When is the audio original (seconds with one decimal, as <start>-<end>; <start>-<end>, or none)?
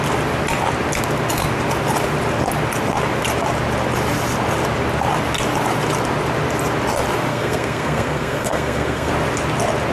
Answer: 0.0-7.3; 9.1-9.9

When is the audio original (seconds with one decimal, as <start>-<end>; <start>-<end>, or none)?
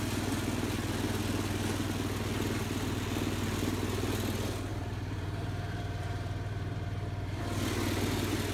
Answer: 0.0-4.7; 7.4-8.5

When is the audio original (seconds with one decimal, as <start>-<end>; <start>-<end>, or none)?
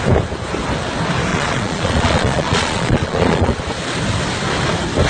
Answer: 0.0-1.3; 3.6-5.1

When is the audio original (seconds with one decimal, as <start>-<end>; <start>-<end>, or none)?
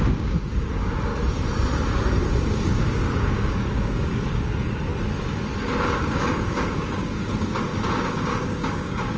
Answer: 1.1-2.4; 4.9-5.8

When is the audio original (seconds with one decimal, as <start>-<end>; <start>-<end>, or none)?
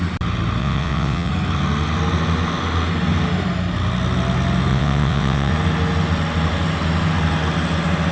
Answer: 0.0-0.6; 1.3-4.7; 5.5-8.1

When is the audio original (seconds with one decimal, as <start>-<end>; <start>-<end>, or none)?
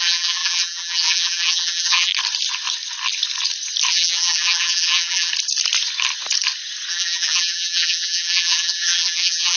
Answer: 2.1-3.9; 5.3-6.9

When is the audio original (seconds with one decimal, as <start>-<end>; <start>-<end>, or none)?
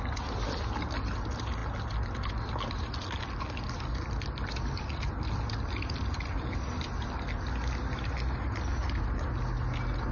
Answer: 0.0-10.1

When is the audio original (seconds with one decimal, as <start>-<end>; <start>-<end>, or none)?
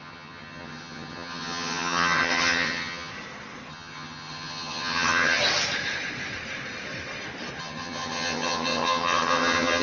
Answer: 3.1-3.7; 5.4-7.6